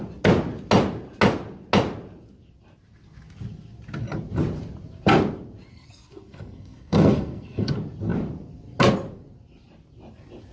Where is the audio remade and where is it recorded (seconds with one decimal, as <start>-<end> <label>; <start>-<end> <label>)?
0.0-5.7 recorded; 5.7-7.7 remade; 7.7-10.5 recorded